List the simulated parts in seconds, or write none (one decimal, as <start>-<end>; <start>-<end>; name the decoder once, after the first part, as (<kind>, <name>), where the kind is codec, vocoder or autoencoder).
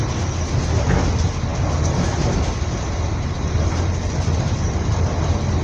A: none